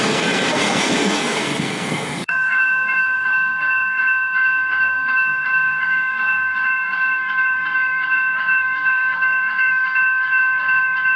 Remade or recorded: remade